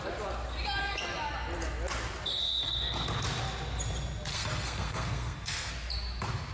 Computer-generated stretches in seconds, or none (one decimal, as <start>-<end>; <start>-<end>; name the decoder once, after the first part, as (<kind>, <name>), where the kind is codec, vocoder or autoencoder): 2.3-2.8 (codec, SNAC); 4.3-5.7